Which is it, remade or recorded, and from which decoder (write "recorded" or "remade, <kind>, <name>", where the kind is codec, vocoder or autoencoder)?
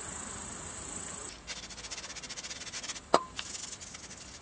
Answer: recorded